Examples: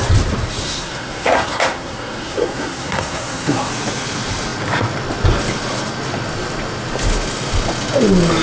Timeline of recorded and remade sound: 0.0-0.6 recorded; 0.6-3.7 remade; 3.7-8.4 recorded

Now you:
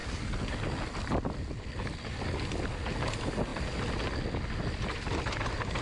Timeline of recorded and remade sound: 0.0-5.8 recorded

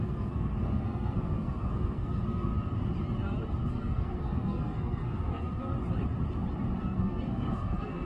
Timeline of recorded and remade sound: 0.0-2.5 remade; 2.5-3.7 recorded; 3.7-5.7 remade; 5.7-6.8 recorded; 6.8-8.1 remade

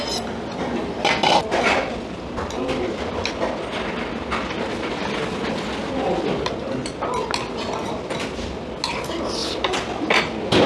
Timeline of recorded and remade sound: 0.0-10.7 recorded

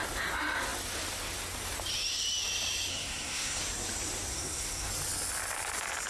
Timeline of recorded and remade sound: 0.0-2.9 recorded; 2.9-3.6 remade; 3.6-4.3 recorded; 4.3-4.9 remade; 4.9-6.1 recorded

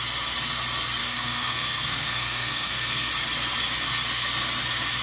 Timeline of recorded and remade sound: 0.0-1.0 recorded; 1.0-3.1 remade; 3.1-5.0 recorded